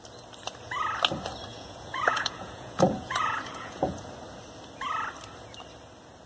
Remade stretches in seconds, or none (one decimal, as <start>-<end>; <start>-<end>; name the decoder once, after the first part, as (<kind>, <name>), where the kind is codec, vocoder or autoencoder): 1.5-4.1 (vocoder, Vocos)